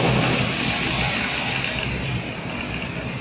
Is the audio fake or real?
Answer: real